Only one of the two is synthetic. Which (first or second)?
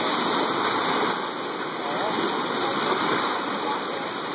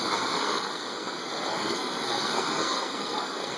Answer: second